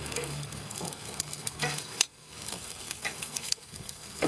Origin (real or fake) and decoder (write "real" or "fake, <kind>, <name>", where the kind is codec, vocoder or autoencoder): fake, codec, SNAC